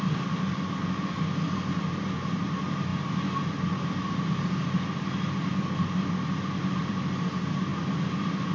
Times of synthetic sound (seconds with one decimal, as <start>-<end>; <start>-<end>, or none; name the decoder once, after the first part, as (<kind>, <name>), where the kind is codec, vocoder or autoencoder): 0.0-8.5 (vocoder, BigVGAN v2)